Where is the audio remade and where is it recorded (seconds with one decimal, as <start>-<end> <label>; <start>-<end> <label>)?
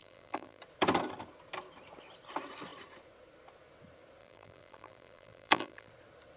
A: 0.0-0.6 remade; 0.6-4.2 recorded; 4.2-5.9 remade; 5.9-6.4 recorded